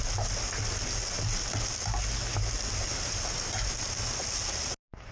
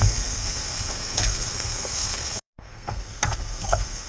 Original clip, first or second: first